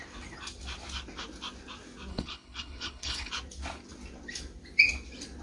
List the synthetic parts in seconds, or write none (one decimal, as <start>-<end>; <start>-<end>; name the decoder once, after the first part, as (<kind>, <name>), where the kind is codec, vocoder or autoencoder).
2.1-3.3 (codec, HILCodec)